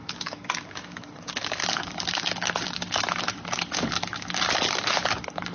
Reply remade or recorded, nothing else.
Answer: remade